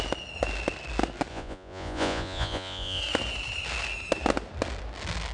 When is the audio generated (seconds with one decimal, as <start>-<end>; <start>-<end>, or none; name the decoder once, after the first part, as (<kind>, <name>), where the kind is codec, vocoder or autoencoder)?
1.3-3.0 (vocoder, Vocos)